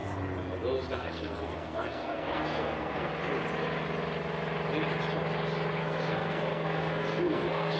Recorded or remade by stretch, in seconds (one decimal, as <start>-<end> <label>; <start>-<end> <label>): 0.0-0.9 recorded; 0.9-3.1 remade; 3.1-5.8 recorded; 5.8-7.8 remade